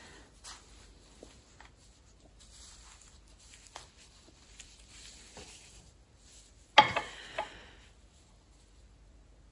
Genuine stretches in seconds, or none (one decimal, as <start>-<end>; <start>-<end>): 0.0-1.8; 5.8-9.5